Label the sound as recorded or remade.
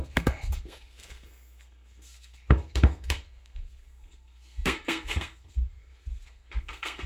remade